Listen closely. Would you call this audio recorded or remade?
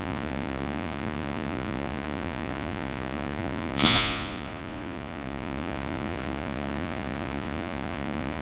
remade